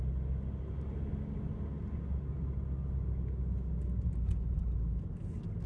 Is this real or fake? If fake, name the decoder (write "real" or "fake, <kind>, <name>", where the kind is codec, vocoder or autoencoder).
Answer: real